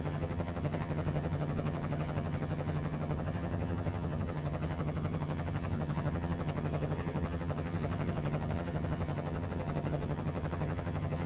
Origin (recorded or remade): remade